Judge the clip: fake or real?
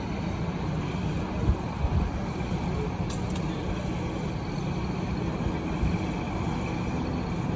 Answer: real